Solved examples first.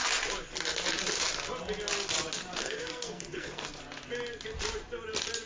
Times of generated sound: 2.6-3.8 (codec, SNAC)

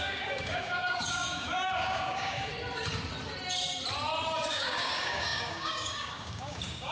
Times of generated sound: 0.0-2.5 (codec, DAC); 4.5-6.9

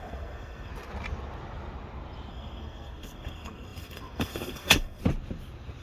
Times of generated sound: 0.0-0.7 (codec, SNAC); 2.3-5.0

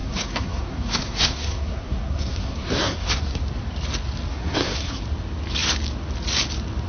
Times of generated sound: 0.0-3.4 (codec, SNAC); 4.3-5.0

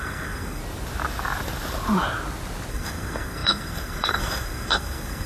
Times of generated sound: 0.0-0.6 (codec, SNAC); 2.7-5.3

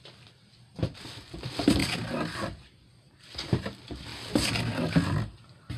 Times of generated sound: 0.0-4.1 (vocoder, BigVGAN v2)

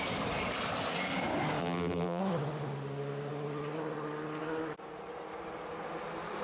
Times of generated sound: 1.6-2.2 (vocoder, BigVGAN v2)